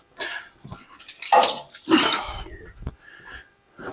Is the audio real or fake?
real